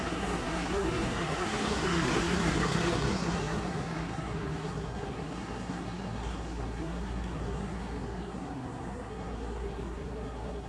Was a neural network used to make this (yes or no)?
yes